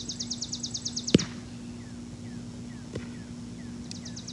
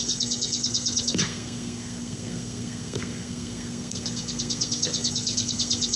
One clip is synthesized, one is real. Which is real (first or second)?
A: first